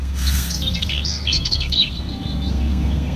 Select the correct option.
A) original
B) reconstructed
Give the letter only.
B